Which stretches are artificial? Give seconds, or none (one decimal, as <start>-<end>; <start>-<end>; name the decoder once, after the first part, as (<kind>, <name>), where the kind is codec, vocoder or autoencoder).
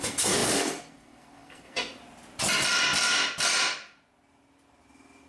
0.0-2.0 (codec, SNAC)